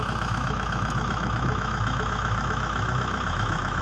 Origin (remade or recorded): remade